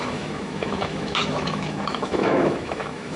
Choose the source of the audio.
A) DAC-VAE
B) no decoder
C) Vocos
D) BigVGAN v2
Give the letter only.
A